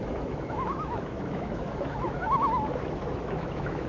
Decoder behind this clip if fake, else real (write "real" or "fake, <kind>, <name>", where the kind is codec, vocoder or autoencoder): fake, autoencoder, DAC-VAE